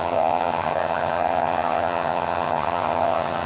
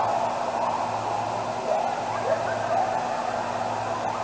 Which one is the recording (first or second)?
second